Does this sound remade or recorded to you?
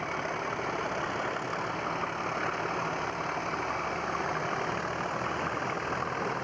recorded